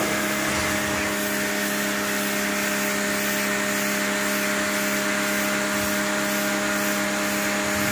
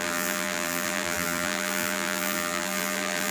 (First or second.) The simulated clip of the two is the second